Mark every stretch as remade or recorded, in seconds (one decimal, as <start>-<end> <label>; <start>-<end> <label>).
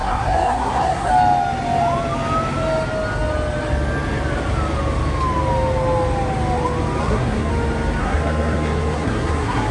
0.0-1.1 remade; 1.1-7.0 recorded; 7.0-7.5 remade; 7.5-8.0 recorded; 8.0-9.7 remade